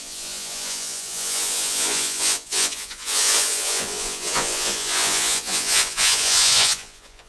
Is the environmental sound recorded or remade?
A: remade